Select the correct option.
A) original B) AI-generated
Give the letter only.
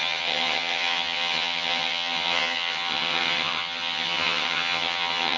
B